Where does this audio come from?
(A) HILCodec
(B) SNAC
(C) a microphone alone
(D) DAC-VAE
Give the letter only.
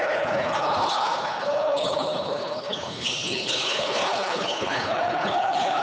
A